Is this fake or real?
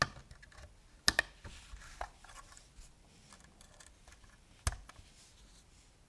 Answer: real